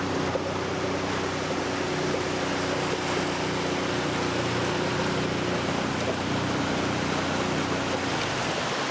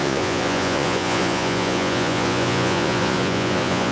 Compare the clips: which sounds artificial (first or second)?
second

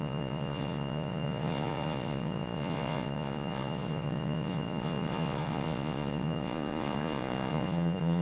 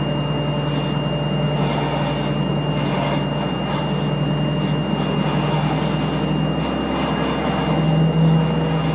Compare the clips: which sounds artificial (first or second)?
first